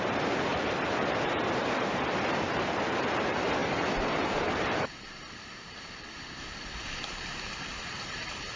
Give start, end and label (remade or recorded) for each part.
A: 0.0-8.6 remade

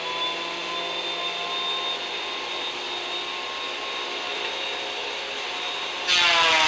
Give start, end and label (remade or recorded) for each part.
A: 0.0-6.7 recorded

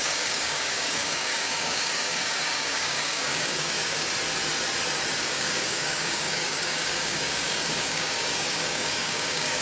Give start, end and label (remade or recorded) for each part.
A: 0.0-4.1 remade; 4.1-5.2 recorded; 5.2-9.6 remade